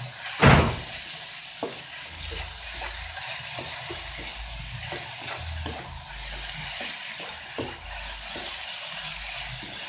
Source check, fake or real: real